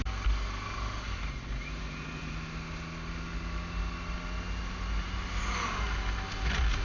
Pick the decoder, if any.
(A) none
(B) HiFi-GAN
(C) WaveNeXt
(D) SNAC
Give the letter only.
A